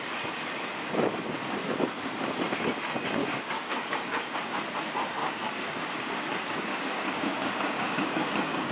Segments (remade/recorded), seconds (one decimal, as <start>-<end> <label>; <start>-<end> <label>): 0.0-3.2 recorded; 3.2-4.5 remade; 4.5-5.2 recorded; 5.2-8.7 remade